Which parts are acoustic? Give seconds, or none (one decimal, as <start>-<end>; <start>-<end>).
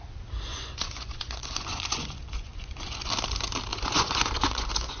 0.0-0.5; 3.1-3.7